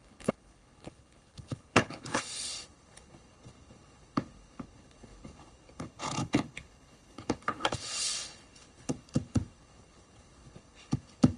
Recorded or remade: remade